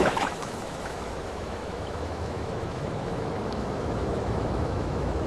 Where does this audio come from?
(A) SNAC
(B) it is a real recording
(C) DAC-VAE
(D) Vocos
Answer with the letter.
C